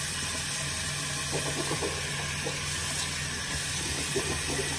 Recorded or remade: recorded